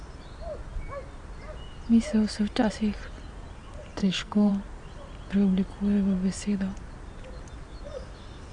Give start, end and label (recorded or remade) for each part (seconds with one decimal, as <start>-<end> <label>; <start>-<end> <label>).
0.0-4.0 recorded; 4.0-4.5 remade; 4.5-8.5 recorded

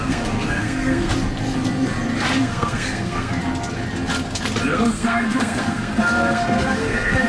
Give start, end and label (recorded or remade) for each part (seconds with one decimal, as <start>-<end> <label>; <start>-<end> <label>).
0.0-1.1 remade; 1.1-2.4 recorded; 2.4-3.4 remade; 3.4-4.7 recorded; 4.7-7.3 remade

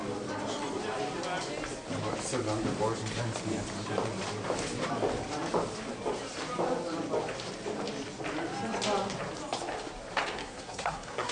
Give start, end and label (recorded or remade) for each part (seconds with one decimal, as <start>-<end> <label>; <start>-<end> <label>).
0.0-10.4 recorded; 10.4-11.3 remade

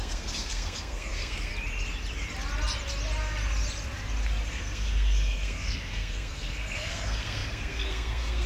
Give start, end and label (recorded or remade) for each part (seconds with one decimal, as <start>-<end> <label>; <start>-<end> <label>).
0.0-1.5 remade; 1.5-4.5 recorded; 4.5-8.5 remade

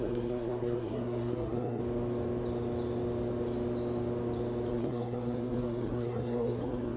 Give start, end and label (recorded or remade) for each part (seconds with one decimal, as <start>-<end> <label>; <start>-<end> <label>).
0.0-1.8 remade; 1.8-4.7 recorded; 4.7-7.0 remade

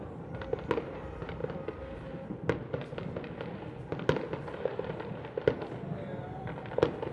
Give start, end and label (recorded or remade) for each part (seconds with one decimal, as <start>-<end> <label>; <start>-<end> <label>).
0.0-7.1 recorded